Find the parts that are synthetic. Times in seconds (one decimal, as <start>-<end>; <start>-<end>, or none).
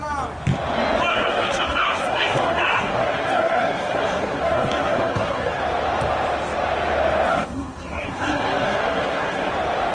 1.1-5.6; 7.3-9.5